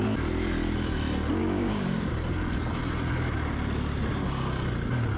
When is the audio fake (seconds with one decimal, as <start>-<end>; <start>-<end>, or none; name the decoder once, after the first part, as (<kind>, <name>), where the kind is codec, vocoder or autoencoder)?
1.4-2.1 (codec, DAC)